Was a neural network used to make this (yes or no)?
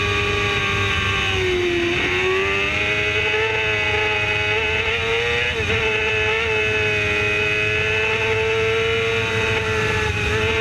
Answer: no